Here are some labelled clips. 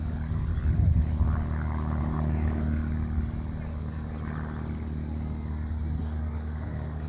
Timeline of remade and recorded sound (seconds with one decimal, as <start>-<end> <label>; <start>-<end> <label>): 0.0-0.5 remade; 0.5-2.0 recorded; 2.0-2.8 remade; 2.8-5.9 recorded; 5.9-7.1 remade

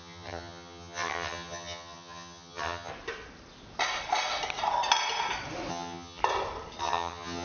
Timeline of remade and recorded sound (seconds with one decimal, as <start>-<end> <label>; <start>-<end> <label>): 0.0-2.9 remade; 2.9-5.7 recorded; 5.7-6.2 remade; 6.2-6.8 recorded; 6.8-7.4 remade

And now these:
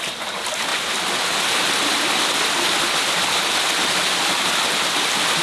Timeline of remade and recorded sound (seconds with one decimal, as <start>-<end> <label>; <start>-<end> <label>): 0.0-5.4 recorded